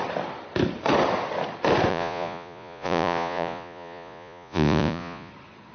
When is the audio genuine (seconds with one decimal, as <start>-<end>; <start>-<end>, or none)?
0.0-1.9; 5.3-5.7